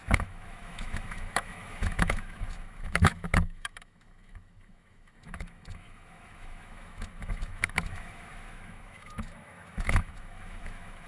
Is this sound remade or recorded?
remade